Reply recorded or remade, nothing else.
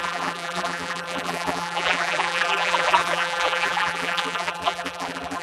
remade